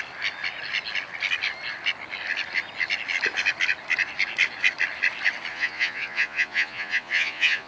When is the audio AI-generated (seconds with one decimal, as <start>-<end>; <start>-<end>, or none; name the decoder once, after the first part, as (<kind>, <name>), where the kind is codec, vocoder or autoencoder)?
5.5-7.7 (vocoder, Vocos)